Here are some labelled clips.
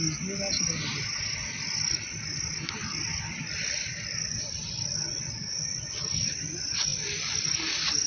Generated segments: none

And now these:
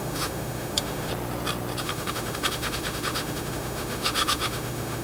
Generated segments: 0.0-1.1 (autoencoder, DAC-VAE); 1.8-5.0

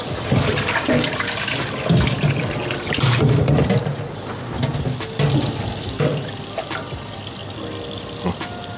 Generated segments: 0.0-8.8 (vocoder, BigVGAN v2)

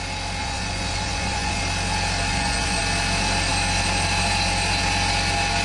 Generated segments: 0.4-1.6 (vocoder, Vocos); 2.3-2.8

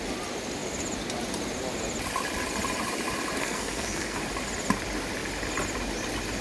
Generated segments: 3.4-4.2 (codec, SNAC)

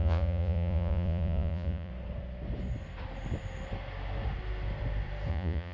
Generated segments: 0.0-1.9 (vocoder, Vocos); 5.3-5.7

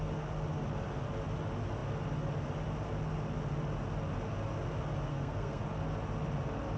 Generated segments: 5.1-5.6 (codec, SNAC)